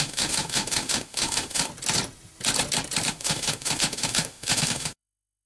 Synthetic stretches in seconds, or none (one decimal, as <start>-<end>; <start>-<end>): 0.0-1.7; 3.1-5.5